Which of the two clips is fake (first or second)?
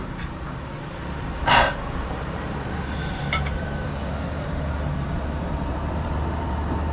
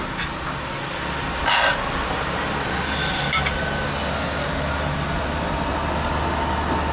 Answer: first